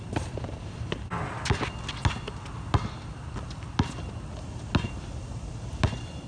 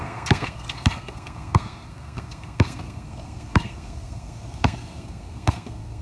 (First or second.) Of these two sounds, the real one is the first